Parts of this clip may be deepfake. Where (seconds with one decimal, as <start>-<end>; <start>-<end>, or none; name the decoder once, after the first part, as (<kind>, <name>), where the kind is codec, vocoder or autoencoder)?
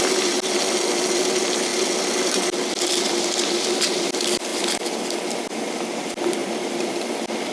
none